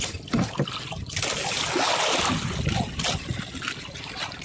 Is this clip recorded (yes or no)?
yes